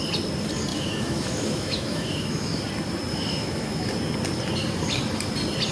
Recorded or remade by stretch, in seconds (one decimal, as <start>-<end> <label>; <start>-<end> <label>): 0.0-0.7 recorded; 0.7-2.6 remade; 2.6-3.1 recorded; 3.1-3.9 remade; 3.9-5.7 recorded